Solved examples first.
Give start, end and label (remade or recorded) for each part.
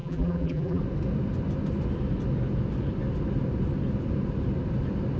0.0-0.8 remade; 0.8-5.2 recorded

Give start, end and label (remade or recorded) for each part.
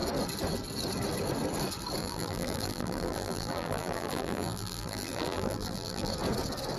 0.0-2.0 recorded; 2.0-6.1 remade; 6.1-6.8 recorded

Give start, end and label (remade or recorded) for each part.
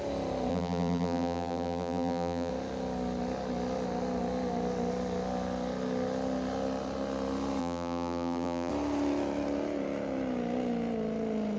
0.0-0.5 recorded; 0.5-2.5 remade; 2.5-7.6 recorded; 7.6-8.7 remade; 8.7-11.6 recorded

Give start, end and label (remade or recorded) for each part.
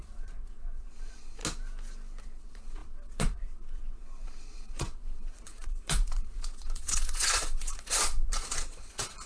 0.0-1.4 remade; 1.4-2.2 recorded; 2.2-9.3 remade